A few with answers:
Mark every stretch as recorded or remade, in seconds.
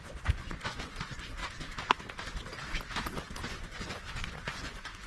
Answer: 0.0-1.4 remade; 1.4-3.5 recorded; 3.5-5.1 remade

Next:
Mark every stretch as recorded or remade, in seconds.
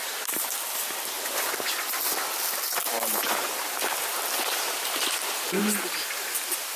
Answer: 0.0-2.9 recorded; 2.9-6.8 remade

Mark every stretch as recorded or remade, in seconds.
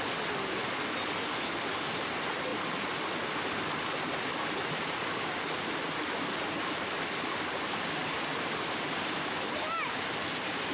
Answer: 0.0-10.7 recorded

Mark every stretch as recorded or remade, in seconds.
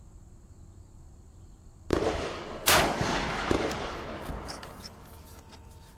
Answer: 0.0-1.9 recorded; 1.9-5.4 remade; 5.4-6.0 recorded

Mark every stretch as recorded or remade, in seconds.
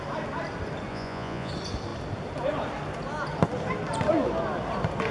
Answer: 0.0-0.9 recorded; 0.9-1.5 remade; 1.5-5.1 recorded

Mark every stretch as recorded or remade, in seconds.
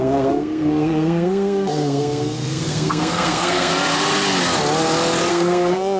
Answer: 0.0-3.7 remade; 3.7-5.3 recorded; 5.3-6.0 remade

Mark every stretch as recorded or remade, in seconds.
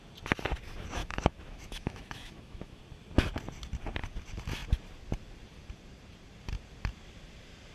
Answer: 0.0-1.0 recorded; 1.0-2.8 remade; 2.8-7.7 recorded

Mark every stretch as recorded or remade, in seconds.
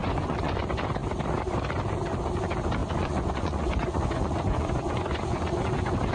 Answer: 0.0-0.6 remade; 0.6-2.8 recorded; 2.8-6.1 remade